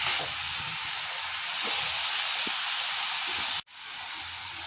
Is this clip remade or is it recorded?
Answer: recorded